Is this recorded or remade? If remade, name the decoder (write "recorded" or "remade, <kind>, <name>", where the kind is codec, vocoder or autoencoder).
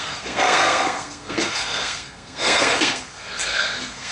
remade, codec, SNAC